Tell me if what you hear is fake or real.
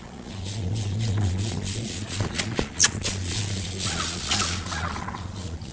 fake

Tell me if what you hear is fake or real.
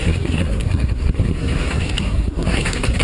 fake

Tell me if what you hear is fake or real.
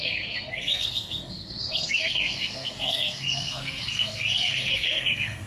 fake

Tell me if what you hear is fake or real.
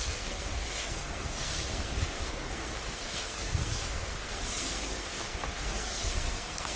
fake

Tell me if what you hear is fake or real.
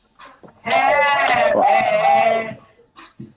real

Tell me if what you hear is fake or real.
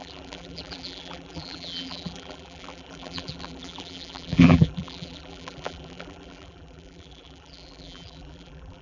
fake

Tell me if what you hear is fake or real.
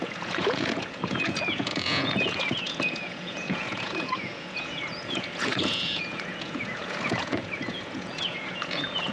fake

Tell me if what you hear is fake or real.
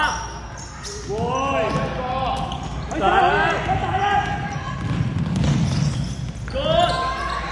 real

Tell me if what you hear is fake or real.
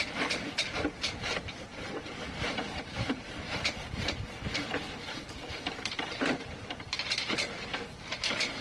fake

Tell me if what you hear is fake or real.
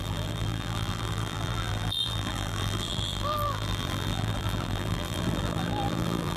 fake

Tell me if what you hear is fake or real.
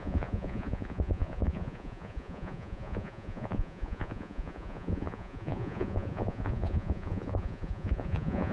fake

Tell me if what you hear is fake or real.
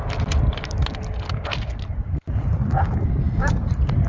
real